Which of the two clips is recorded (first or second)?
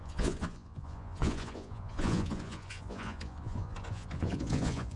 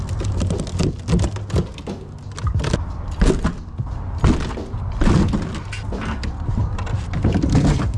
second